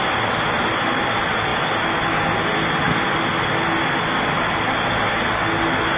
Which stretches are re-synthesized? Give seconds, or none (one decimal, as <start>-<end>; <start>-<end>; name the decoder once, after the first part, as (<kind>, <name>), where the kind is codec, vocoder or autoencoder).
none